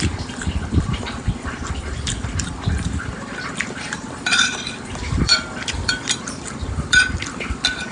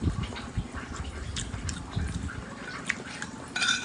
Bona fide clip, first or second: second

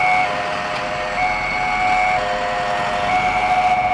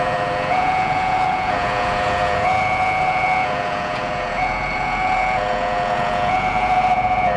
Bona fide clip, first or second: first